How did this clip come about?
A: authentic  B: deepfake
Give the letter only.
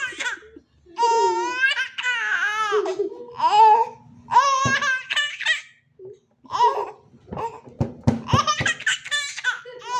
A